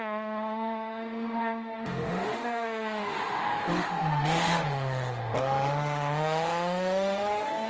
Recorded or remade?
remade